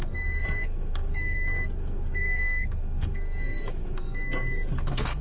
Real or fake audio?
fake